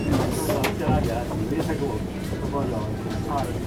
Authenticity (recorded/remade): recorded